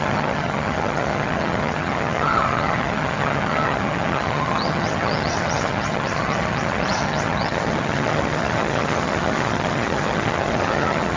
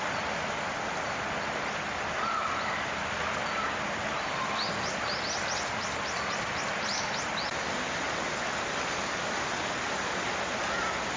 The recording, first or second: second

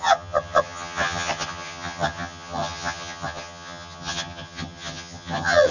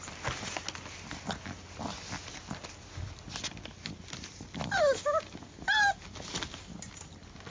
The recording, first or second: second